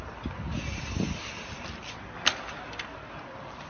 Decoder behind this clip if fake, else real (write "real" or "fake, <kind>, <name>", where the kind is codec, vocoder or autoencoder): real